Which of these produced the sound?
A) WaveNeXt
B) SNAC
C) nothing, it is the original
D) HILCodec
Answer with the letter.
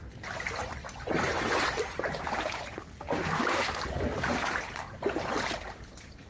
C